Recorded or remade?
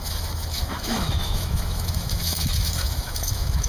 remade